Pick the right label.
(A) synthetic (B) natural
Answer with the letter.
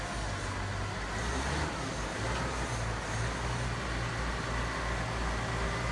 B